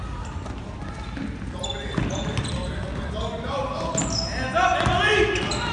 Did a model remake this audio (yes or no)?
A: no